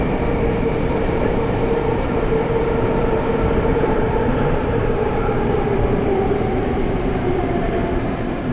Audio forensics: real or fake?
fake